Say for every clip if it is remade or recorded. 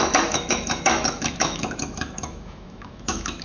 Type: remade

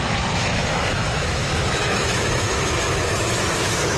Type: remade